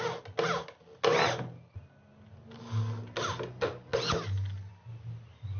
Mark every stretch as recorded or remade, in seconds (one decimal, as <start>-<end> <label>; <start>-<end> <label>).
0.0-5.6 recorded